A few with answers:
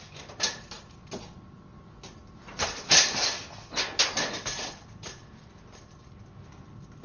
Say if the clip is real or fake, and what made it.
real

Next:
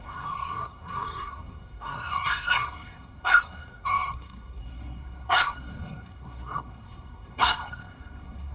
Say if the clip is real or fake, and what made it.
fake, codec, SNAC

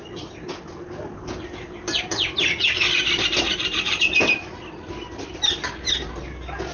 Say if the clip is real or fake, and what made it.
real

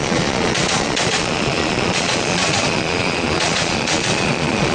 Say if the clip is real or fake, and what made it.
fake, vocoder, Vocos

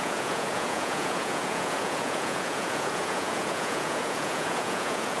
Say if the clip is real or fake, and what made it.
fake, vocoder, Vocos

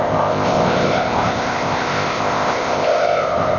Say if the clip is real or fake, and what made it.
fake, codec, ZipCodec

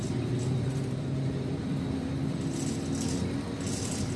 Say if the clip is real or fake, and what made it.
fake, vocoder, BigVGAN v2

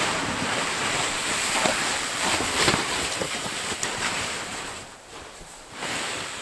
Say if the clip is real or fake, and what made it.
fake, vocoder, BigVGAN v2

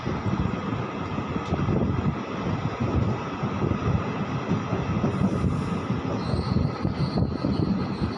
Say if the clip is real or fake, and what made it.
real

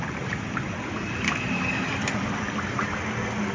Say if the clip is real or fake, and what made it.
real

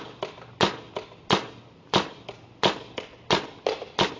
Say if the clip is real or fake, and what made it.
real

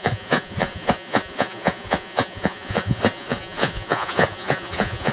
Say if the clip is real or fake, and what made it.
fake, vocoder, Vocos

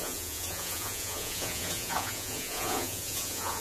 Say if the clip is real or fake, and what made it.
fake, vocoder, Vocos